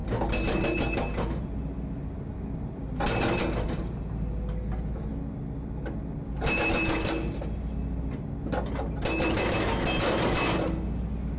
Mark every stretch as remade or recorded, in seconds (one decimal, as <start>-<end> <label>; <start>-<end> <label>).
0.0-11.4 recorded